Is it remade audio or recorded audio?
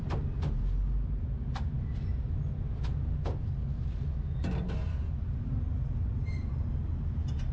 recorded